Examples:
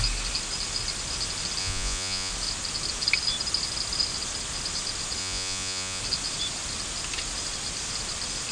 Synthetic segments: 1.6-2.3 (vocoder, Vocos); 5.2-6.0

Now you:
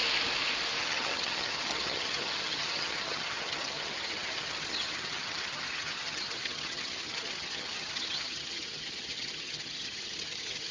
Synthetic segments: 0.8-10.7 (vocoder, HiFi-GAN)

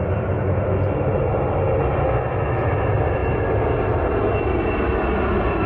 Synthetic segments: none